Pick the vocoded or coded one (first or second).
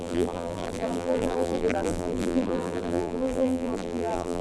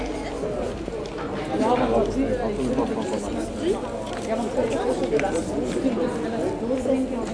first